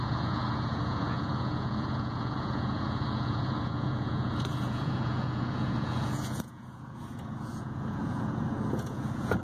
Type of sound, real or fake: fake